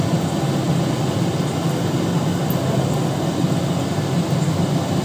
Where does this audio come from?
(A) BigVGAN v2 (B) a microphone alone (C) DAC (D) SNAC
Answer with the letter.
B